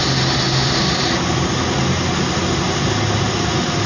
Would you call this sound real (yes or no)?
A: yes